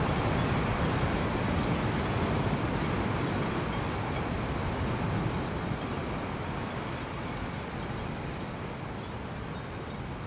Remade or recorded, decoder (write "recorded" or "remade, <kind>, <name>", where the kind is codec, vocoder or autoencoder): recorded